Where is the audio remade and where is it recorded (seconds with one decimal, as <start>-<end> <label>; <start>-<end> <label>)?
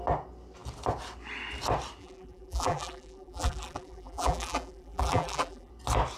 0.0-2.0 recorded; 2.0-5.7 remade; 5.7-6.2 recorded